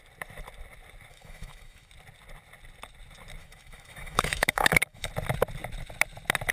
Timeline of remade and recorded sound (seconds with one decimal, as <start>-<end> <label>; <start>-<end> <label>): 0.0-1.1 recorded; 1.1-1.9 remade; 1.9-3.4 recorded; 3.4-5.1 remade; 5.1-6.5 recorded